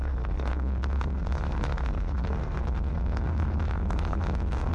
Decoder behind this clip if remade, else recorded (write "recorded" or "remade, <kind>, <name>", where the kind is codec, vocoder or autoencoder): remade, codec, SNAC